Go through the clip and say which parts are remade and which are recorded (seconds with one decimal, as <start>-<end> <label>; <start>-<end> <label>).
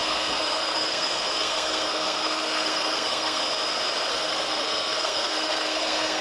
0.0-3.4 remade; 3.4-4.1 recorded; 4.1-6.2 remade